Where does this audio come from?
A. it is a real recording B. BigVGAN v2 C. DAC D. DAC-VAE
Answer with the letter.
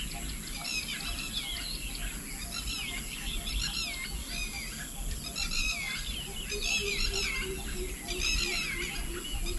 A